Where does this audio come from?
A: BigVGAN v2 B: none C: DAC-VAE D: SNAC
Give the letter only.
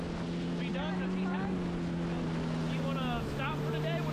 B